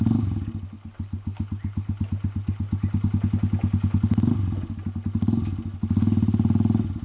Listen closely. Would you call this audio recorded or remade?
recorded